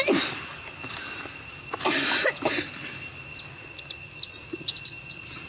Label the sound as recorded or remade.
recorded